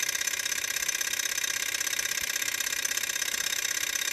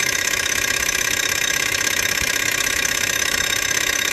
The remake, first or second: second